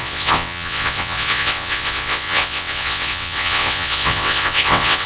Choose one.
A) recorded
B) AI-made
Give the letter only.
B